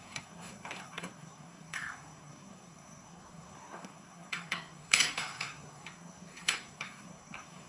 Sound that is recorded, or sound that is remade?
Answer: remade